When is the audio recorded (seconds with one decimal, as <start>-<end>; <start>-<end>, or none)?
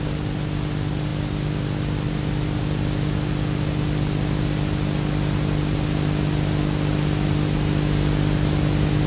0.0-9.1